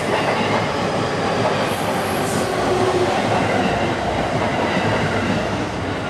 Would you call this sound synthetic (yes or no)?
no